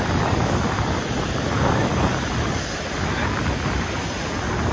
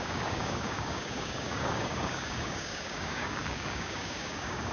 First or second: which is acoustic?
first